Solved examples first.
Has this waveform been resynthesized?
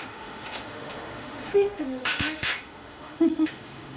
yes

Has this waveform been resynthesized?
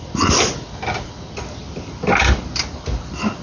no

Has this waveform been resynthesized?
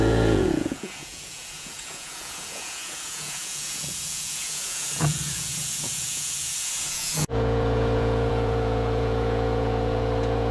yes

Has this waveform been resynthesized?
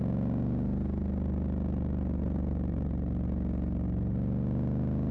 no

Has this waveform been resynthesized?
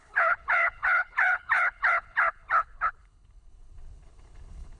yes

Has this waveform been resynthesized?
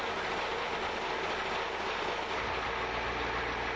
no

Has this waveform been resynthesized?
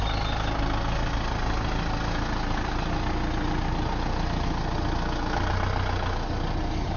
no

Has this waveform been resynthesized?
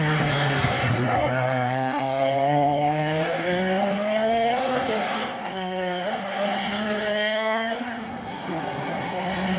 yes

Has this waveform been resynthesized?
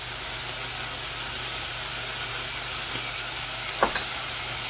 no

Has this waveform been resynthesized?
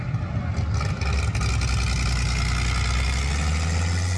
no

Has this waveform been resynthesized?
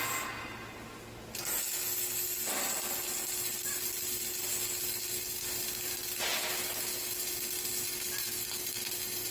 no